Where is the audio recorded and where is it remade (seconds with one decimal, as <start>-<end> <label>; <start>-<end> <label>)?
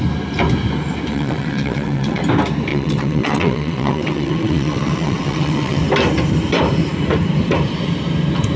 0.0-1.1 recorded; 1.1-2.2 remade; 2.2-2.7 recorded; 2.7-5.8 remade; 5.8-8.6 recorded